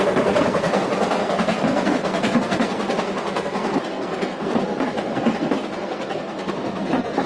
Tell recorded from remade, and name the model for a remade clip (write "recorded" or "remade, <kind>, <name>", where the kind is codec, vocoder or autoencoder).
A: remade, codec, SNAC